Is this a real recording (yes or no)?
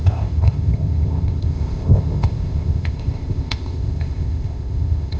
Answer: no